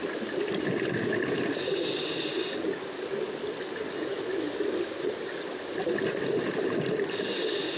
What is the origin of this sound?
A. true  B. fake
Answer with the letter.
A